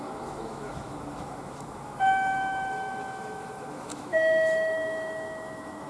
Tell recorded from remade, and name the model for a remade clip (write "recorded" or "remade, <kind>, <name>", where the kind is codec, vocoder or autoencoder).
remade, autoencoder, DAC-VAE